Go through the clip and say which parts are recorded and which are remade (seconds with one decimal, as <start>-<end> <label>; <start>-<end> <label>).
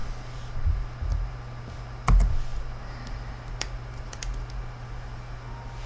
0.0-5.9 recorded